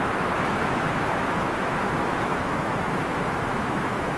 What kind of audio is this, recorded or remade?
remade